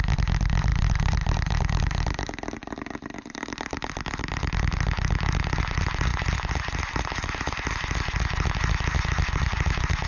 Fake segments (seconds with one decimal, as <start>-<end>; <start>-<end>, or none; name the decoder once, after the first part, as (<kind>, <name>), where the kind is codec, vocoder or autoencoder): none